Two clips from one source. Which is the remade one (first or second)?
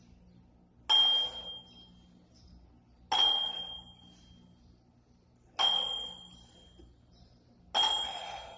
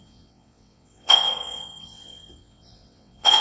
second